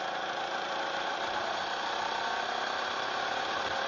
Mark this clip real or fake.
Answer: real